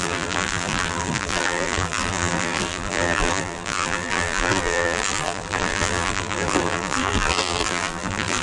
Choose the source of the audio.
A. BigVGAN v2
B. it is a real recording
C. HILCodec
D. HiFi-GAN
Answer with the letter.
A